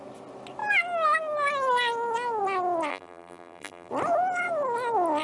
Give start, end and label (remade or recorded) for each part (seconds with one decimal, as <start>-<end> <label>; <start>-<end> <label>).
0.0-2.9 recorded; 2.9-3.9 remade; 3.9-5.2 recorded